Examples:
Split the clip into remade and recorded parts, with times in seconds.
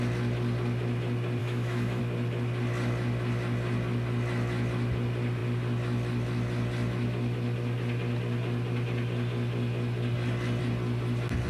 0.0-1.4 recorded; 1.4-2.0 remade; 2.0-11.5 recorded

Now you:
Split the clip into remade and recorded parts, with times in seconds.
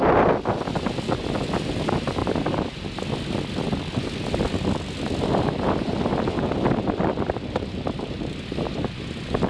0.0-9.5 recorded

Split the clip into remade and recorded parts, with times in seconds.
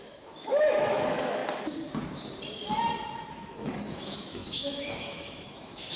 0.0-1.4 remade; 1.4-3.3 recorded; 3.3-6.0 remade